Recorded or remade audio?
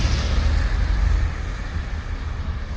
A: recorded